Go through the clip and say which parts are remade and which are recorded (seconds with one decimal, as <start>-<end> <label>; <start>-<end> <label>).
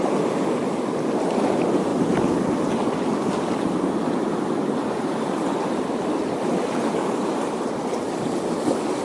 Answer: 0.0-9.0 remade